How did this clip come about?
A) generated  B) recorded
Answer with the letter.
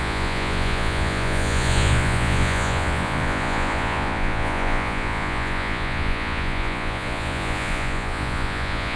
A